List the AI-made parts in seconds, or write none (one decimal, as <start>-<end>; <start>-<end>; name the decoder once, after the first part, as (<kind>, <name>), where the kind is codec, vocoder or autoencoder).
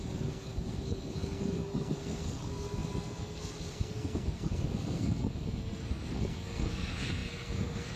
0.0-8.0 (codec, SNAC)